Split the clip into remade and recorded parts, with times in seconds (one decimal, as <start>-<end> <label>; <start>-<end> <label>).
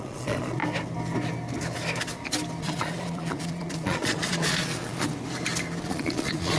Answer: 0.0-0.6 remade; 0.6-2.6 recorded; 2.6-5.1 remade; 5.1-5.8 recorded; 5.8-6.6 remade